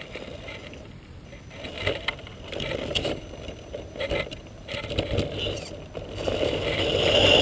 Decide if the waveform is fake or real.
fake